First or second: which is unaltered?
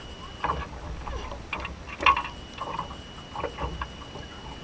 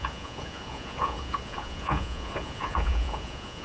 first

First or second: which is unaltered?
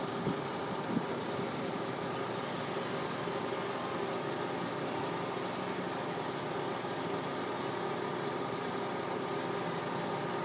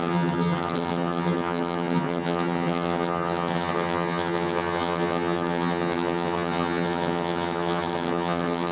first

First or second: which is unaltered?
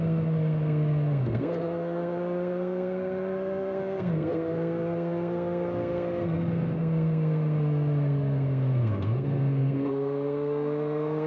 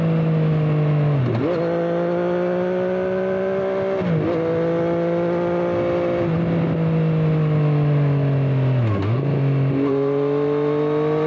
second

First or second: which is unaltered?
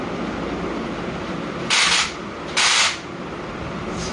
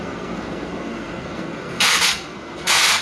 first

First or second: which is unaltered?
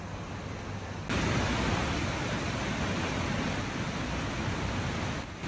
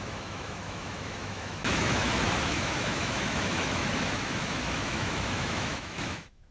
first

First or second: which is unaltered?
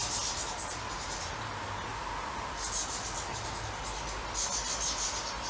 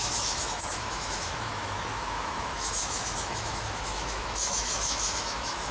first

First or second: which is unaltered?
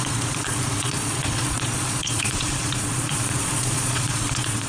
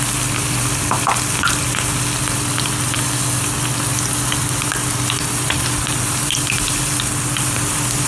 second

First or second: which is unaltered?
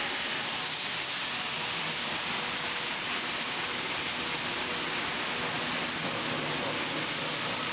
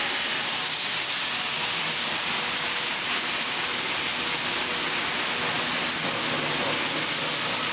second